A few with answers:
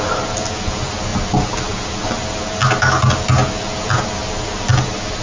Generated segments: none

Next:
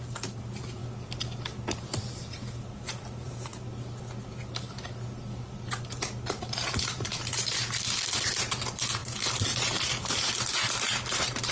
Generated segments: 0.0-0.8 (vocoder, BigVGAN v2); 1.7-3.5; 6.4-11.5

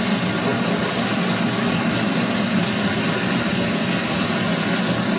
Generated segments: none

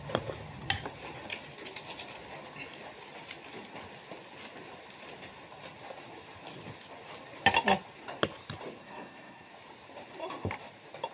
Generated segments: 8.8-9.5 (codec, SNAC)

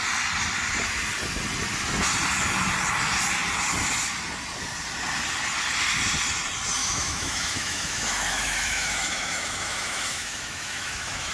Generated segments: 6.8-11.3 (autoencoder, DAC-VAE)

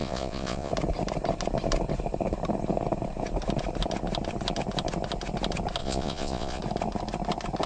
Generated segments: 0.0-0.7 (vocoder, Vocos); 5.8-6.6

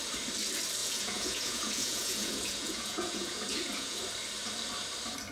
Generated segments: 0.8-4.0 (vocoder, Vocos)

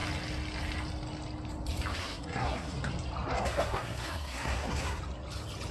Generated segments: 1.9-2.9 (codec, SNAC); 3.3-5.0